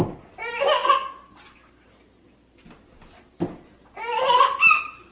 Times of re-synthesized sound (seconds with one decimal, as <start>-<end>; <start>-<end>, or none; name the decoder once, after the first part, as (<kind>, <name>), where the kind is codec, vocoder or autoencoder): none